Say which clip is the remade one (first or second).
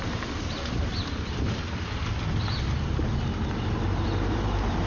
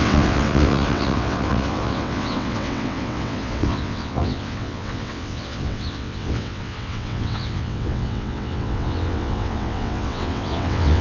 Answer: second